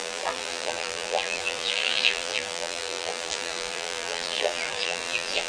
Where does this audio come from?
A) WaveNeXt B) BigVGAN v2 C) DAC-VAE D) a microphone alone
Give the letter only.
B